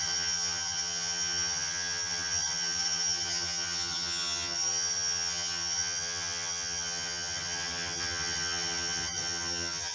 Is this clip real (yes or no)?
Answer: no